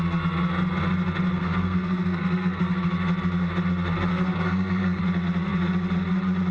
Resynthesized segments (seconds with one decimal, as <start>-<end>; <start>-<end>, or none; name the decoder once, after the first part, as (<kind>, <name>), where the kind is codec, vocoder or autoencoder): 1.3-2.9 (codec, SNAC); 4.1-5.0